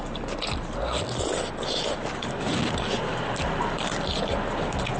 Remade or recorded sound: recorded